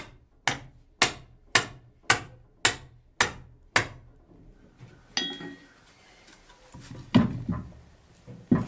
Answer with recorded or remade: recorded